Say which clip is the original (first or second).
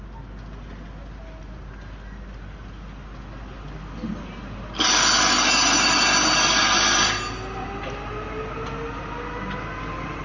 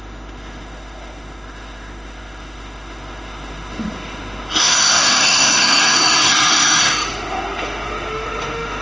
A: first